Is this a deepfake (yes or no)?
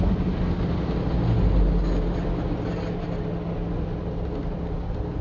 no